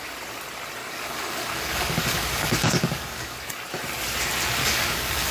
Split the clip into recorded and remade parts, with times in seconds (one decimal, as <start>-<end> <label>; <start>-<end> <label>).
0.0-0.8 recorded; 0.8-3.5 remade; 3.5-4.6 recorded; 4.6-5.3 remade